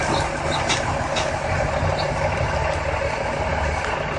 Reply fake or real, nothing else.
real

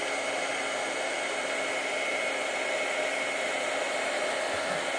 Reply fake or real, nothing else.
real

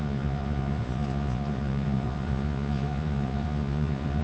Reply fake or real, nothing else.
fake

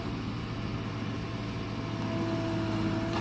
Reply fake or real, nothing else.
real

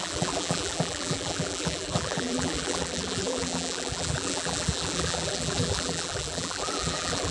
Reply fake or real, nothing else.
fake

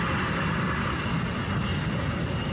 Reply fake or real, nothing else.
real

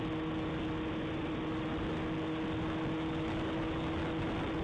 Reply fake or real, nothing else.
real